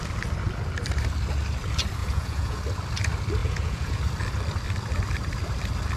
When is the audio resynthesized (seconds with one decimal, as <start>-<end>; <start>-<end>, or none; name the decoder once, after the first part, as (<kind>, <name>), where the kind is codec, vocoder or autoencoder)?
2.0-2.6 (vocoder, Vocos); 3.4-4.0